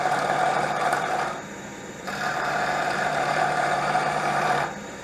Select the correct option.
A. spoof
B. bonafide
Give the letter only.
A